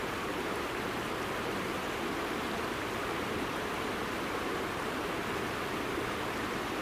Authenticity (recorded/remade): recorded